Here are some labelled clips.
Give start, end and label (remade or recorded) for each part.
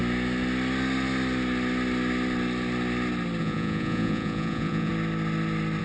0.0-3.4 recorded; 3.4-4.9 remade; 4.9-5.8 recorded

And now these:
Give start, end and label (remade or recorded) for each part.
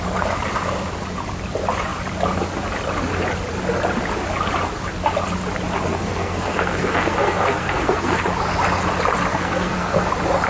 0.0-5.9 recorded; 5.9-8.2 remade; 8.2-9.3 recorded; 9.3-10.1 remade; 10.1-10.5 recorded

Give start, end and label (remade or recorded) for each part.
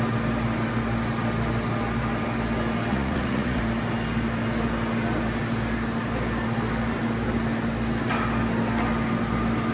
0.0-2.9 recorded; 2.9-3.6 remade; 3.6-9.7 recorded